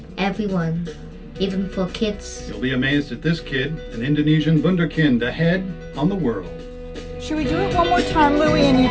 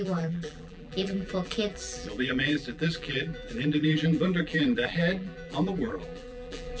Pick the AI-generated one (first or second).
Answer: second